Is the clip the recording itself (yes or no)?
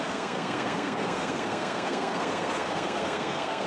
no